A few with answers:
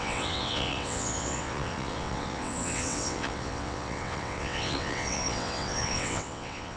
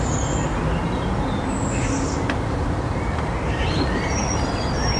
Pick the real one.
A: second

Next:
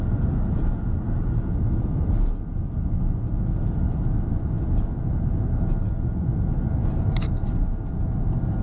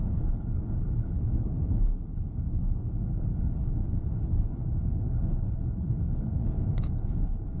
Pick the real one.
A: first